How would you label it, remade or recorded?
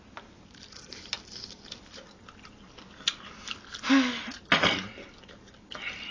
recorded